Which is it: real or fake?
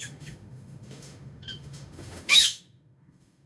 fake